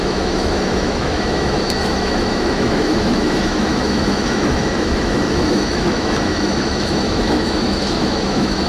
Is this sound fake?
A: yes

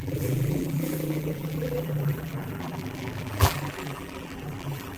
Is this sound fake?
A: yes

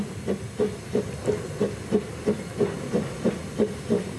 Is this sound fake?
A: no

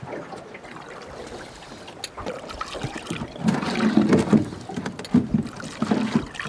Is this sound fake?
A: no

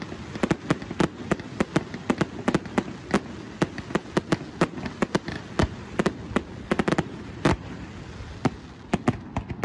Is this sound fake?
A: no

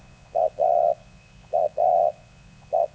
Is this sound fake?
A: yes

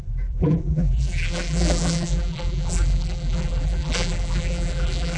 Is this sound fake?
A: yes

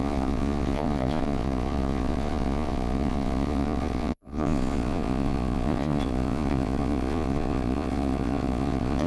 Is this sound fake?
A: yes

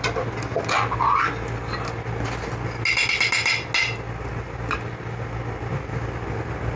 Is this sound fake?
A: no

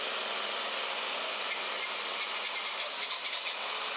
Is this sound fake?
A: no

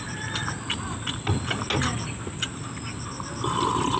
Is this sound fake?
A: no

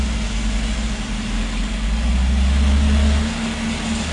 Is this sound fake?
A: no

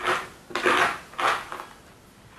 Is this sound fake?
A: no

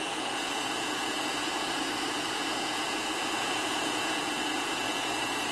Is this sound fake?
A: yes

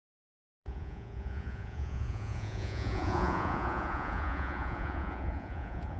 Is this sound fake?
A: yes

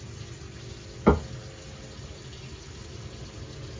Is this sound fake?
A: no